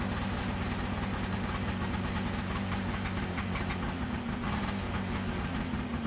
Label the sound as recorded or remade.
recorded